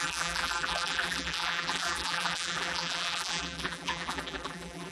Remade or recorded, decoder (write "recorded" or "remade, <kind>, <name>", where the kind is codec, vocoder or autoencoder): remade, vocoder, BigVGAN v2